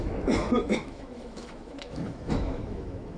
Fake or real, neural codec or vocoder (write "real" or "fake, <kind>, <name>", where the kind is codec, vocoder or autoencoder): fake, autoencoder, DAC-VAE